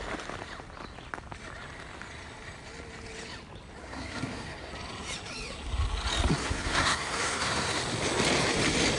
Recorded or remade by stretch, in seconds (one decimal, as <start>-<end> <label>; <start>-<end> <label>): 0.0-3.8 recorded; 3.8-4.7 remade; 4.7-6.4 recorded; 6.4-7.8 remade; 7.8-9.0 recorded